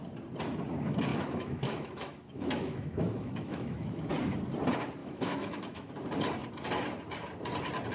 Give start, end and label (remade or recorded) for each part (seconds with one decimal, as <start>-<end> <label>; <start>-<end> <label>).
0.0-1.1 recorded; 1.1-4.1 remade; 4.1-5.0 recorded; 5.0-5.9 remade; 5.9-7.9 recorded